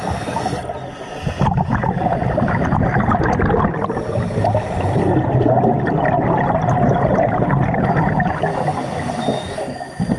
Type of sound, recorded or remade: recorded